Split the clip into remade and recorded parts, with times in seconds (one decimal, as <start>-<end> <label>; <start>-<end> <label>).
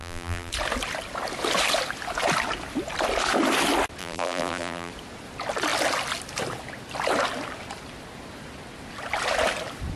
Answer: 0.0-0.5 remade; 0.5-4.0 recorded; 4.0-4.9 remade; 4.9-10.0 recorded